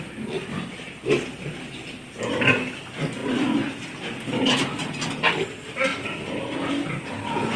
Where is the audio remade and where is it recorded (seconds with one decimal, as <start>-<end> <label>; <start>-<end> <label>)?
0.0-5.9 recorded; 5.9-6.9 remade; 6.9-7.6 recorded